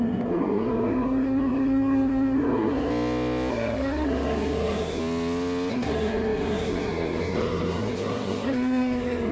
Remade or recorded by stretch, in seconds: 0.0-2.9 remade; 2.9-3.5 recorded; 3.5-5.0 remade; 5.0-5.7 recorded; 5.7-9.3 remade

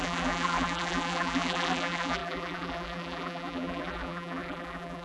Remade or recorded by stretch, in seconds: 0.0-5.0 remade

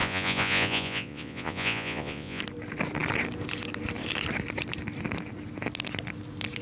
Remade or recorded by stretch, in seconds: 0.0-2.4 remade; 2.4-6.6 recorded

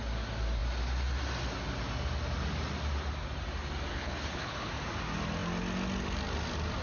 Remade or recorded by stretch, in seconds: 0.0-3.9 recorded; 3.9-4.7 remade; 4.7-6.8 recorded